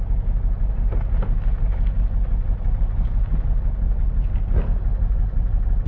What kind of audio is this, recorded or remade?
recorded